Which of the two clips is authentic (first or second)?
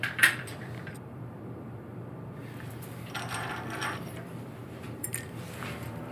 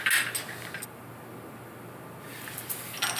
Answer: second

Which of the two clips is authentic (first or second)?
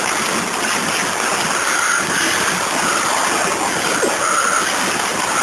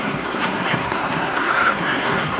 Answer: first